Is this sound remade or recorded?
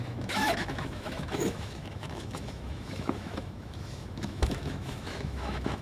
remade